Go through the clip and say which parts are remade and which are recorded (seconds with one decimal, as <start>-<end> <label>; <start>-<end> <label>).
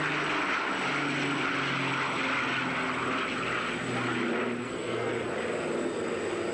0.0-4.6 recorded; 4.6-5.3 remade; 5.3-6.5 recorded